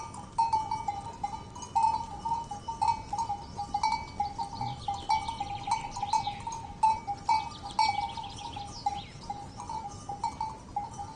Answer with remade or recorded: recorded